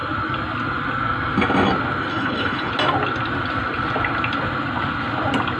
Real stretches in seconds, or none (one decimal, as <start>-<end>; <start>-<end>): 0.0-2.1; 2.7-5.6